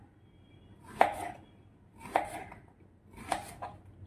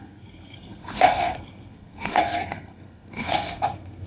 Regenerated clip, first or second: second